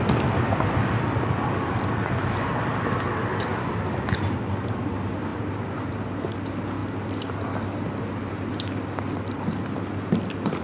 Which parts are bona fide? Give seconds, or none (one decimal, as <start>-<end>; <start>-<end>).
0.0-3.3; 4.0-5.3; 5.9-6.8